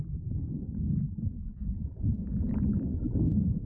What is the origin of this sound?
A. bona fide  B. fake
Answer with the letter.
A